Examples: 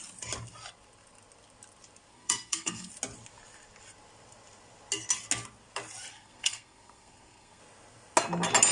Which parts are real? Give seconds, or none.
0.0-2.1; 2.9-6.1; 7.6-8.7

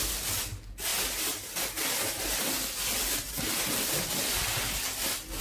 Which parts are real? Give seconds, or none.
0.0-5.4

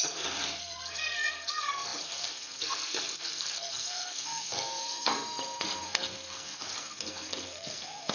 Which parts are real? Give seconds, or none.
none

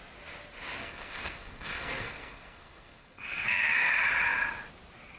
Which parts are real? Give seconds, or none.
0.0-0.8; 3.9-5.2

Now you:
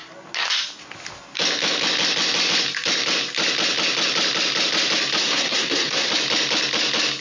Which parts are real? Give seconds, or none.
0.0-5.2; 6.1-7.2